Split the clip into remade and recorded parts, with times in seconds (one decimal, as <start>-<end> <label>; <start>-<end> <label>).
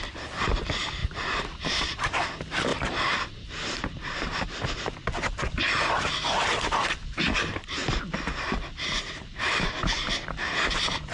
0.0-1.0 recorded; 1.0-2.1 remade; 2.1-2.7 recorded; 2.7-4.3 remade; 4.3-7.0 recorded; 7.0-10.7 remade; 10.7-11.1 recorded